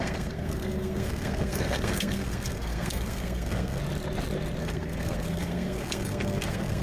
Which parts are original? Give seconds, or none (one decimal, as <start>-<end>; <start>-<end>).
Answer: 3.8-4.6